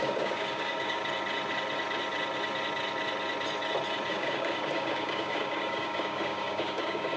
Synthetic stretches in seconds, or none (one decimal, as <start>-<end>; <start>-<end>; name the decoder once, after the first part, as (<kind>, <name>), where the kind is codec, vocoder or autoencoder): 0.0-1.0 (codec, DAC); 4.1-7.2